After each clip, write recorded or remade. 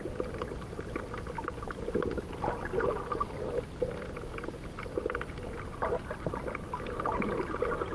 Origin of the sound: recorded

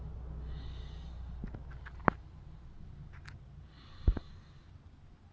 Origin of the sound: recorded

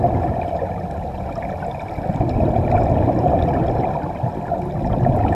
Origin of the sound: recorded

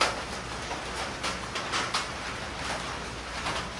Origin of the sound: recorded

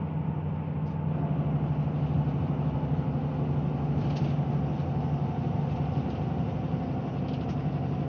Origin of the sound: recorded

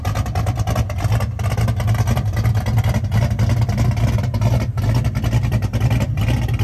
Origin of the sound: recorded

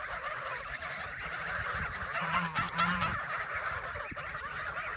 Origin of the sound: remade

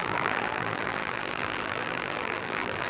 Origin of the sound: remade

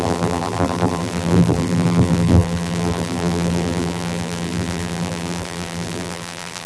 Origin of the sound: remade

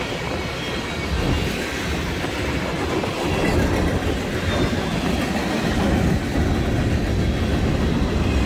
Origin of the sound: recorded